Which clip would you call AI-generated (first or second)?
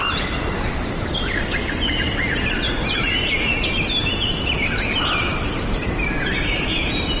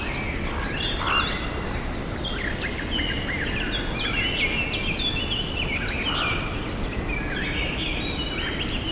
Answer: first